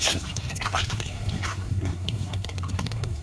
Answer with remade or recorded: remade